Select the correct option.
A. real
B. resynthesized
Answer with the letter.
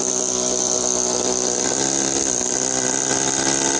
A